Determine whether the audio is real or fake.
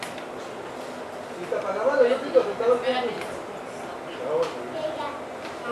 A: real